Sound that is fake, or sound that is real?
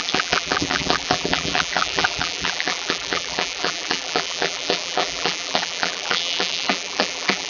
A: fake